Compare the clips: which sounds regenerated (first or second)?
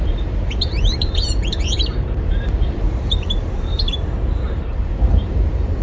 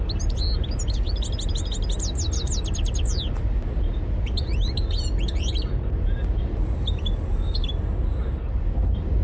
first